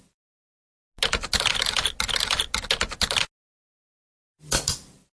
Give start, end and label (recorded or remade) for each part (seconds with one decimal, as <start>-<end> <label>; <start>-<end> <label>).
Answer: 0.0-5.2 recorded